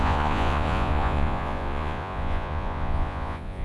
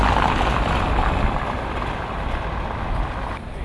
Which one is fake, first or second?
first